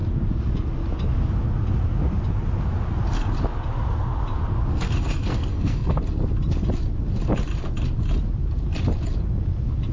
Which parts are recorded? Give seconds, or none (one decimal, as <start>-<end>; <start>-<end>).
0.0-4.7; 6.0-9.9